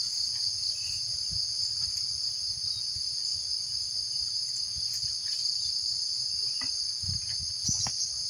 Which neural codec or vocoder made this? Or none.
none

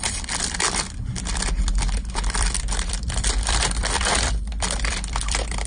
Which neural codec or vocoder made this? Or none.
none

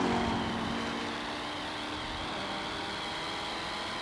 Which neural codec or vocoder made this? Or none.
none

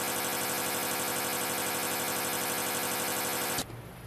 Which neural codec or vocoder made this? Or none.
none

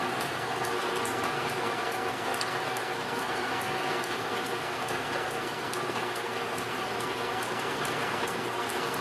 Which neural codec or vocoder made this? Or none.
codec, SNAC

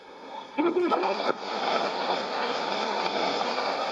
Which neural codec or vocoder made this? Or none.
codec, SNAC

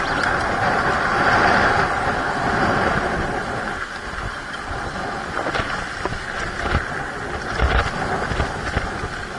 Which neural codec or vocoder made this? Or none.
none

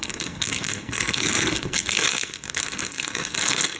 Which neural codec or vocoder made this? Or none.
codec, SNAC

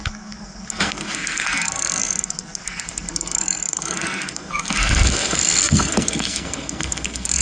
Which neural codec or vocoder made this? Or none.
codec, SNAC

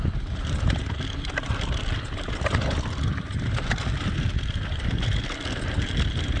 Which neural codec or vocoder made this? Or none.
none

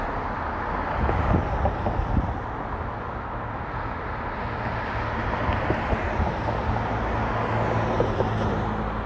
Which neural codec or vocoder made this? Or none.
none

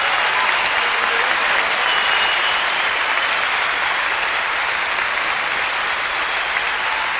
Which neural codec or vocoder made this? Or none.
none